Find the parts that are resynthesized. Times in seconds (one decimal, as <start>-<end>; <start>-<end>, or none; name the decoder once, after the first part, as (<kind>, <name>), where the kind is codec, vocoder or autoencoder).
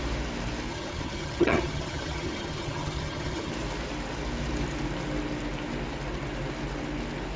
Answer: 0.7-3.5 (vocoder, HiFi-GAN)